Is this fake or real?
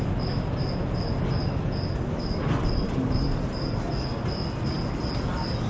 real